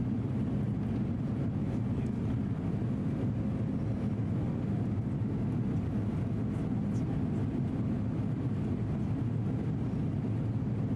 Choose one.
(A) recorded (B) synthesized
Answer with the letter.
A